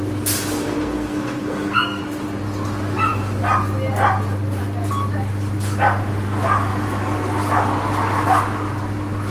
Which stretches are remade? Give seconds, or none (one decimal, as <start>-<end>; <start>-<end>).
0.6-2.0